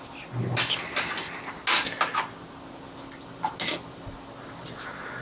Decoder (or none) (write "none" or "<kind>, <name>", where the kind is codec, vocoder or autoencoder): none